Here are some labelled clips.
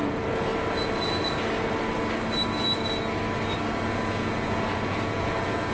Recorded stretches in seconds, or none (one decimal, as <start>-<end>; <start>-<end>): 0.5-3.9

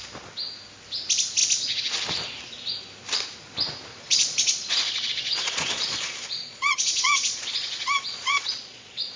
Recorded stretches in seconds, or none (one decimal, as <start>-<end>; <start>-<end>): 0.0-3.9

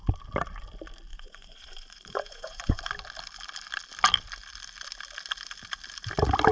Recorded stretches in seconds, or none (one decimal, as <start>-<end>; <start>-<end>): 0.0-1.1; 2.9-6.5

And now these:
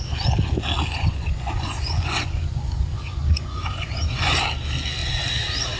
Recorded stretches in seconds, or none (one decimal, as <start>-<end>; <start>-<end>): 0.0-0.9; 4.4-5.8

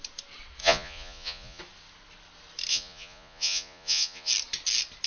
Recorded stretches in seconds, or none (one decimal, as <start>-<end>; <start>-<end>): 0.0-0.6; 1.6-2.7; 4.3-5.1